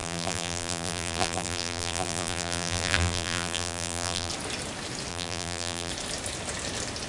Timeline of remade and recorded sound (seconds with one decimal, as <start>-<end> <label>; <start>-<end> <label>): 0.0-4.3 remade; 4.3-5.1 recorded; 5.1-5.9 remade; 5.9-7.1 recorded